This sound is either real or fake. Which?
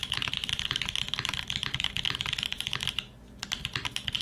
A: real